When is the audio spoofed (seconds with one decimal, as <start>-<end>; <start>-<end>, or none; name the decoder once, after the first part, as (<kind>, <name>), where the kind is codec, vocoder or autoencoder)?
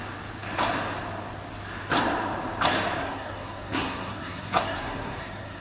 3.0-5.6 (codec, SNAC)